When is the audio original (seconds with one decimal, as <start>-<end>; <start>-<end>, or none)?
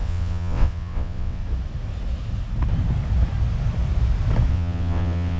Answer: 1.4-4.5